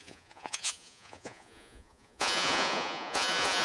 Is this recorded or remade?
remade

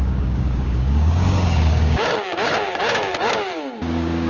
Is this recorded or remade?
remade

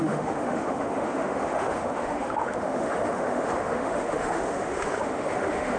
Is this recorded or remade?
remade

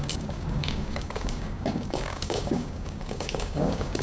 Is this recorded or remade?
remade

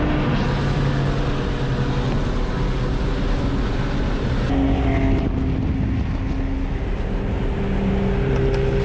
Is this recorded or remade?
recorded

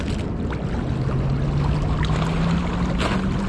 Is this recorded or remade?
recorded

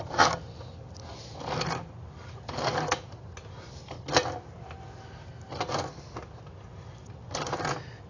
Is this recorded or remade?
recorded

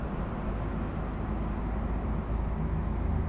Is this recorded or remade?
recorded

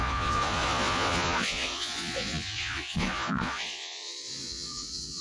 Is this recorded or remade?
remade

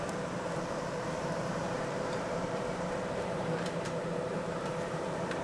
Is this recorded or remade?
remade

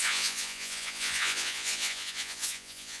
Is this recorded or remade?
remade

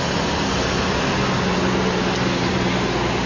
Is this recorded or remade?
recorded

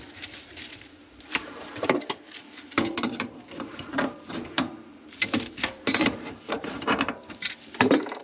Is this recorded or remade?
remade